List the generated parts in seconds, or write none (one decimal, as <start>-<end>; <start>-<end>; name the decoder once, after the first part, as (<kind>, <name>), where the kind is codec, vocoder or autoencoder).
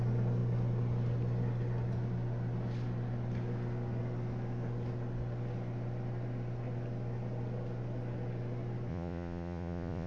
8.9-10.1 (vocoder, Vocos)